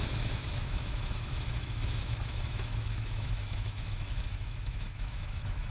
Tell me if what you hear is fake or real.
fake